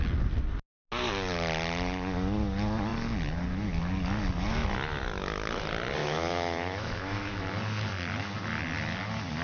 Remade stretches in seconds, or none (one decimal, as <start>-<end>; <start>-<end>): 6.0-7.5